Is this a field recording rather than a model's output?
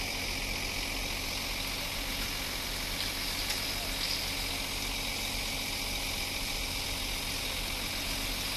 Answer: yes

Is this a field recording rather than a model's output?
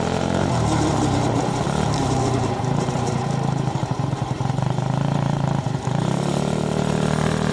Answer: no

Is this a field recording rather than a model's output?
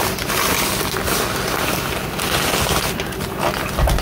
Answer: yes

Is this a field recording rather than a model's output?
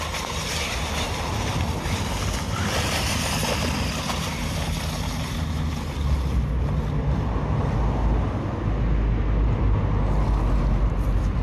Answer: yes